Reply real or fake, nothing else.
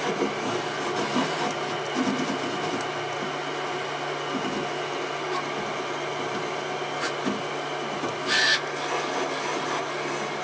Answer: real